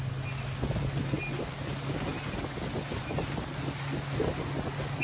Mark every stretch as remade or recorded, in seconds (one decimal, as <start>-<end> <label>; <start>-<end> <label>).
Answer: 0.0-5.0 recorded